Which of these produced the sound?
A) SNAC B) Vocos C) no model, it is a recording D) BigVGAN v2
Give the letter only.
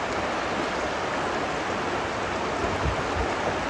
C